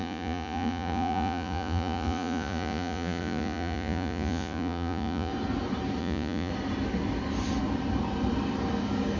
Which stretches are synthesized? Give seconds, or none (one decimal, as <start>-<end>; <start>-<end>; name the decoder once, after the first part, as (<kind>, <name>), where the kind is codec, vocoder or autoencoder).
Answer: 0.0-5.3 (vocoder, Vocos); 6.0-6.5